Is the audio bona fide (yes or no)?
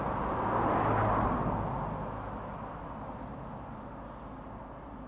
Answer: yes